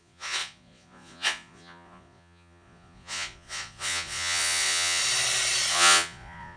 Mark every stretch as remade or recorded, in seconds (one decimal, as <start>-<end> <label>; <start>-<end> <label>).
0.0-5.0 remade; 5.0-5.7 recorded; 5.7-6.6 remade